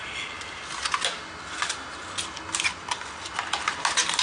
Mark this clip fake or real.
real